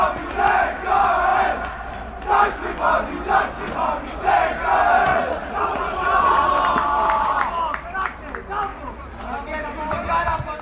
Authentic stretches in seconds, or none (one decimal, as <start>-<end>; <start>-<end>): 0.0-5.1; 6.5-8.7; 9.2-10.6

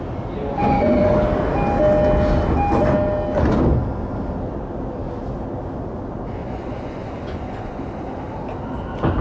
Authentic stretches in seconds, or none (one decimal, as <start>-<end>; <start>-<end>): 0.0-0.5; 1.1-6.4; 7.8-9.2

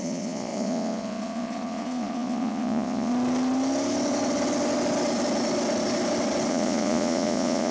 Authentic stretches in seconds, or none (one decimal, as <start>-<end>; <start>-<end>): 3.1-6.5